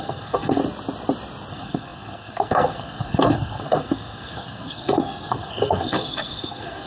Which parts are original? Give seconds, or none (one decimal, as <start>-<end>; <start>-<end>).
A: 0.6-1.5